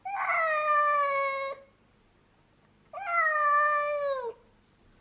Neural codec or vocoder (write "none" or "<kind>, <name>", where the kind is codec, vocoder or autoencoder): none